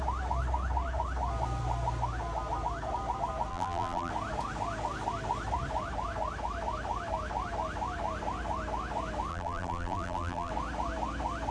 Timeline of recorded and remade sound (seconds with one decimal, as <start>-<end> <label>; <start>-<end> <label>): 0.0-3.5 recorded; 3.5-4.1 remade; 4.1-9.3 recorded; 9.3-10.5 remade; 10.5-11.5 recorded